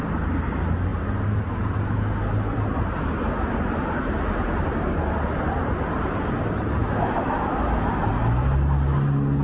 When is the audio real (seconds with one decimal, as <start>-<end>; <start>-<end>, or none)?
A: 0.0-6.8; 7.9-9.4